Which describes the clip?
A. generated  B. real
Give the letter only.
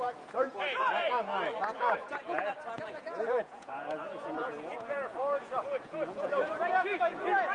A